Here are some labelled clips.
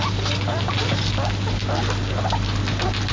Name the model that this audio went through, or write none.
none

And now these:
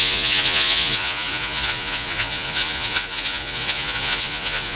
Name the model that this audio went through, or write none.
vocoder, Vocos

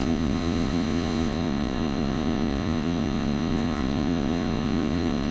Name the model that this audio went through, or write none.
vocoder, Vocos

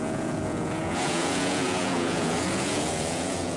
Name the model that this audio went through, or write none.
vocoder, Vocos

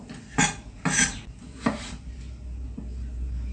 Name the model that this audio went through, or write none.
none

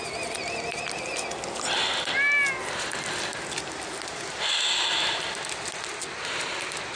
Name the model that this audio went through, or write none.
none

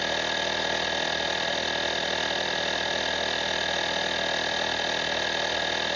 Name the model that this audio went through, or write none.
none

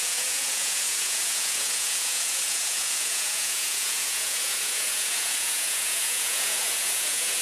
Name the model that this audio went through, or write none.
vocoder, Vocos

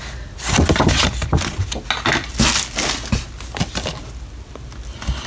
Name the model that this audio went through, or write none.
none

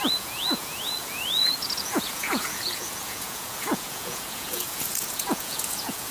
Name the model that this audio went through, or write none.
vocoder, Vocos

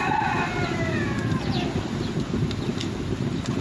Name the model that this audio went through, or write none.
none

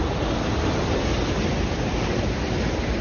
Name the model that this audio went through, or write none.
none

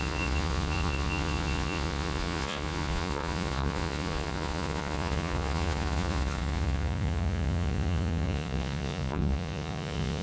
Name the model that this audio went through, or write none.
vocoder, Vocos